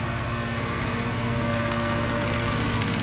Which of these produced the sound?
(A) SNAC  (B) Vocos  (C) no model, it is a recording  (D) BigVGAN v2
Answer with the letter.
A